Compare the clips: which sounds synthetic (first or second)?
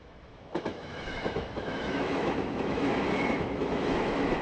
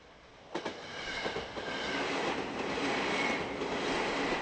first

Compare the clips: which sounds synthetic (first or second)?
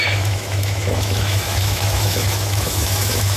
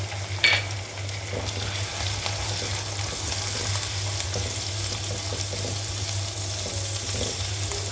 first